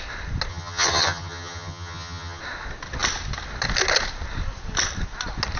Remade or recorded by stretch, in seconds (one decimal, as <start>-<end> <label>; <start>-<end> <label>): 0.0-0.5 recorded; 0.5-2.4 remade; 2.4-5.6 recorded